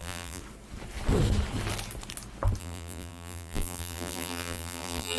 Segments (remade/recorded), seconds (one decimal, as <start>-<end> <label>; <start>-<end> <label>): 0.0-0.4 remade; 0.4-2.6 recorded; 2.6-5.2 remade